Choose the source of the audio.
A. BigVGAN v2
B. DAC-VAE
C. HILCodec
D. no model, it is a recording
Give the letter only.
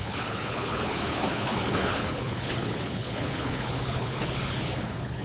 C